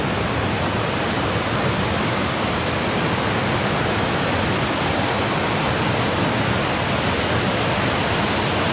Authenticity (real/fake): real